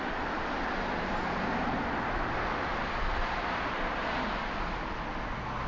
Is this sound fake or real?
real